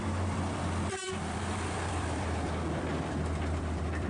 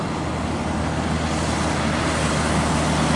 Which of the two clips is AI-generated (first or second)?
first